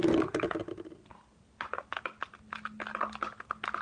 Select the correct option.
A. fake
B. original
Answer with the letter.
B